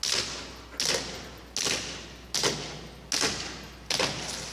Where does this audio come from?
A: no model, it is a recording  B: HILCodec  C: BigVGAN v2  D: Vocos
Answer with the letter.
A